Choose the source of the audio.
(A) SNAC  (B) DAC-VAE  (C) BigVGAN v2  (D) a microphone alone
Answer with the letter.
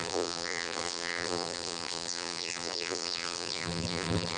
C